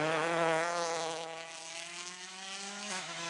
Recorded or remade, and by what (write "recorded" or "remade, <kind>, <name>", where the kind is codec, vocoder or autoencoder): remade, autoencoder, DAC-VAE